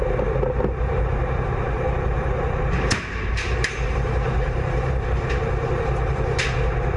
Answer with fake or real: fake